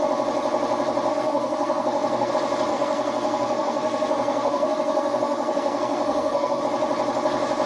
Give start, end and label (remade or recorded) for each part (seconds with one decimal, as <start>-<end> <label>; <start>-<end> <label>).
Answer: 0.0-1.1 recorded; 1.1-2.3 remade; 2.3-2.7 recorded; 2.7-6.6 remade; 6.6-7.7 recorded